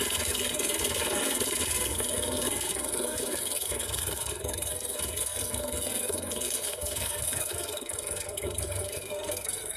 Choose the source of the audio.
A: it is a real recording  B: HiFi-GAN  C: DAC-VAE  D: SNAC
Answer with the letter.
D